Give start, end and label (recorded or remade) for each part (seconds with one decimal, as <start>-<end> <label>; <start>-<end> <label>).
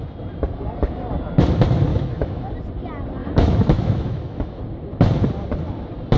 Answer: 0.0-1.9 recorded; 1.9-2.5 remade; 2.5-3.2 recorded; 3.2-4.6 remade; 4.6-6.2 recorded